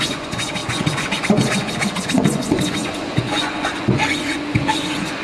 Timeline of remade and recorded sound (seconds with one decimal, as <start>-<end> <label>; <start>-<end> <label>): 0.0-5.2 remade